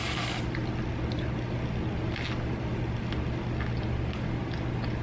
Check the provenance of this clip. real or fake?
real